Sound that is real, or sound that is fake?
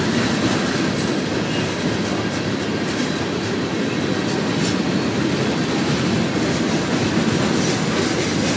real